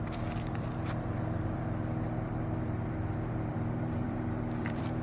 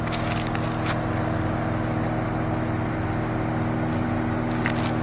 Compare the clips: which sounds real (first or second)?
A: second